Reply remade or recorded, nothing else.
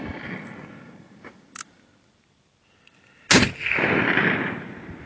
recorded